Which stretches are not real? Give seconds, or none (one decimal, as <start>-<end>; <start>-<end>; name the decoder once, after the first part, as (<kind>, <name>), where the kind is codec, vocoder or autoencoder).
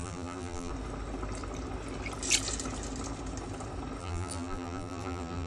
0.0-0.7 (vocoder, BigVGAN v2); 4.0-5.5